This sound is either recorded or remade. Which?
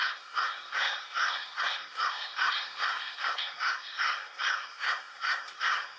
remade